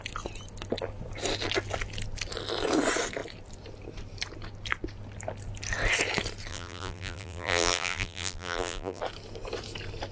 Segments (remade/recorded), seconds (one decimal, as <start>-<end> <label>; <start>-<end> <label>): 0.0-6.5 recorded; 6.5-9.0 remade; 9.0-10.1 recorded